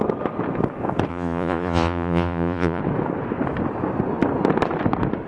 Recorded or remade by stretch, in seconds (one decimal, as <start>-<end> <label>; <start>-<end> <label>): 0.0-1.1 recorded; 1.1-2.8 remade; 2.8-5.3 recorded